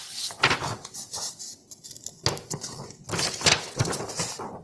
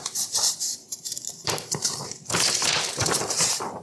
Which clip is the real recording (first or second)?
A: first